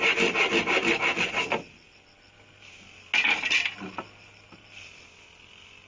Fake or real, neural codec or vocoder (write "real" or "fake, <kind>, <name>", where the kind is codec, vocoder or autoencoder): real